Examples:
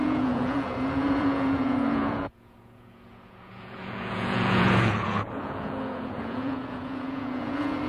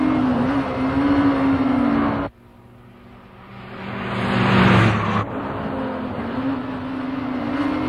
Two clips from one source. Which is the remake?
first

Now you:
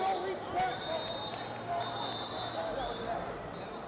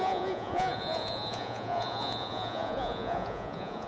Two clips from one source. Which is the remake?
second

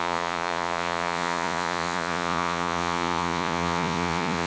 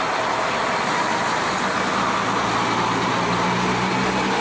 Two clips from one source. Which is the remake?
first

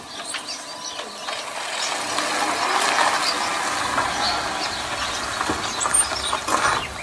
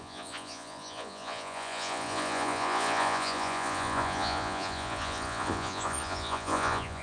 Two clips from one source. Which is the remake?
second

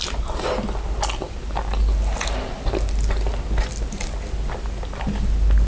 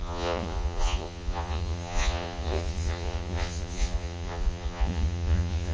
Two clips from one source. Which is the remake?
second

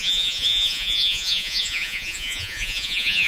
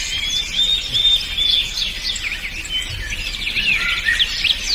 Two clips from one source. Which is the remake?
first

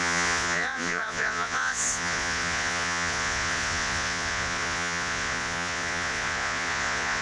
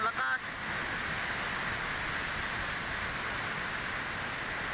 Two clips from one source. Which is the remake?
first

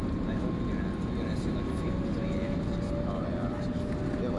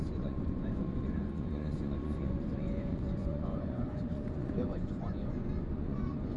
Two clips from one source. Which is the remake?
second